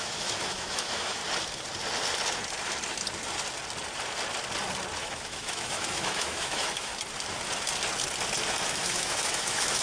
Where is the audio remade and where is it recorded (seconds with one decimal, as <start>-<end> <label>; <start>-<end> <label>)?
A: 0.0-1.2 remade; 1.2-5.0 recorded; 5.0-6.9 remade; 6.9-8.7 recorded; 8.7-9.8 remade